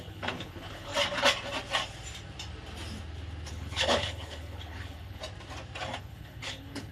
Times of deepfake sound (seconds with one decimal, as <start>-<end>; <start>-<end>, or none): 0.0-0.9; 3.5-5.2; 6.0-6.9

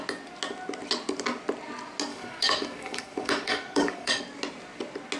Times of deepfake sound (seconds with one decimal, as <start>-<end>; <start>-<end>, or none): 2.1-4.2

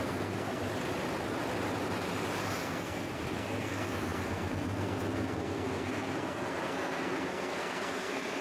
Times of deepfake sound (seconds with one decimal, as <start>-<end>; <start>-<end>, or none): 0.0-0.6; 2.6-8.4

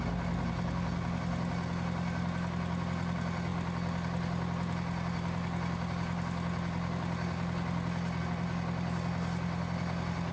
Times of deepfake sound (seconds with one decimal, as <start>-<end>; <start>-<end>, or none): none